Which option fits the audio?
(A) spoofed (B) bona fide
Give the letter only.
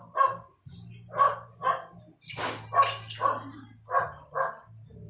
B